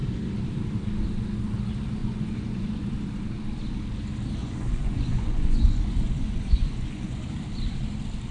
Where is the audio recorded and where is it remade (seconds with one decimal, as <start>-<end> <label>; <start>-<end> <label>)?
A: 0.0-2.0 recorded; 2.0-2.9 remade; 2.9-4.4 recorded; 4.4-7.2 remade; 7.2-8.3 recorded